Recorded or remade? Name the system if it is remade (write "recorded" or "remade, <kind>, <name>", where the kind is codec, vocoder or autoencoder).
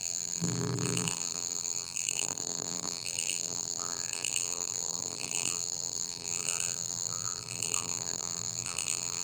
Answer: remade, vocoder, BigVGAN v2